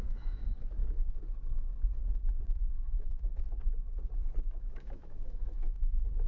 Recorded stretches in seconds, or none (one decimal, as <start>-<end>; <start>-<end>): 0.8-2.7; 3.3-4.6